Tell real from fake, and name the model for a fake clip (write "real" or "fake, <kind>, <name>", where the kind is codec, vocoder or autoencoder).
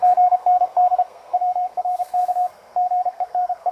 fake, codec, SNAC